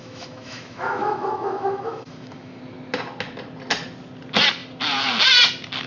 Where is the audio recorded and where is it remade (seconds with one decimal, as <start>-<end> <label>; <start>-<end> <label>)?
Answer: 0.0-2.6 remade; 2.6-5.9 recorded